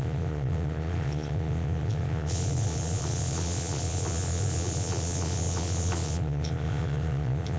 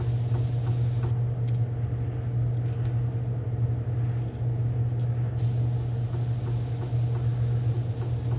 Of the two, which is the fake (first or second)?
first